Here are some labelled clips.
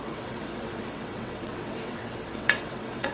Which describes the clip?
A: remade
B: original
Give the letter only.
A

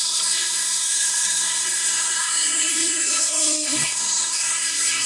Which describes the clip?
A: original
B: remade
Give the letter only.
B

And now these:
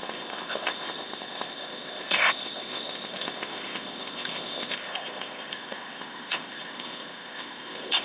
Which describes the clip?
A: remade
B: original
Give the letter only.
A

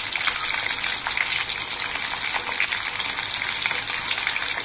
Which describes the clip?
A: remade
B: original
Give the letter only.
B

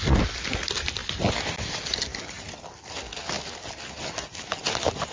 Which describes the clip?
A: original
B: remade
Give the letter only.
A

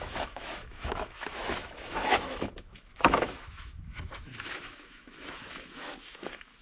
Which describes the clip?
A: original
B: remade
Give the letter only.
B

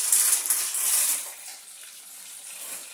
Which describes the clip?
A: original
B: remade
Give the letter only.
A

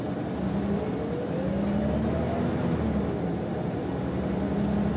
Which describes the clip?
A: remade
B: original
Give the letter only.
B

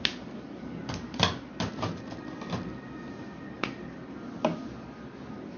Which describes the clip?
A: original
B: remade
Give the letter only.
A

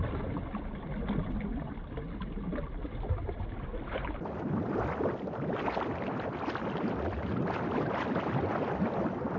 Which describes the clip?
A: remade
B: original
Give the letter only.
B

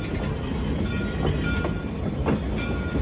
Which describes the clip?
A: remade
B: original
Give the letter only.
B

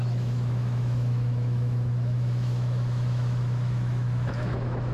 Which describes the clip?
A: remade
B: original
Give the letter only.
A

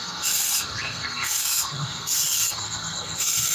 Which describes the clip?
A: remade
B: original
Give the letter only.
A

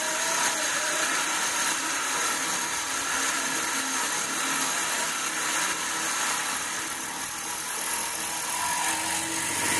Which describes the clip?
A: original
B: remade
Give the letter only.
A